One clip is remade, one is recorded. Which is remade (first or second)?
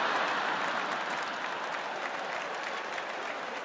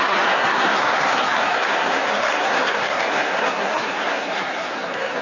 second